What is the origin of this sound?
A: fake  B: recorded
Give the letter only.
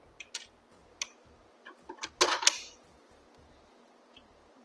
B